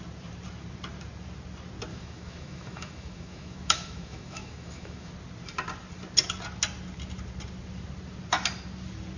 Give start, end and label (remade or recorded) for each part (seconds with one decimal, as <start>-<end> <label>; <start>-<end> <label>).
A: 0.0-1.9 recorded; 1.9-5.1 remade; 5.1-9.2 recorded